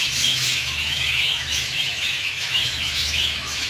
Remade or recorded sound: remade